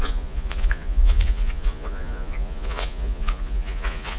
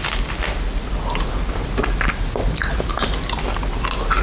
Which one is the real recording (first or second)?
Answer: second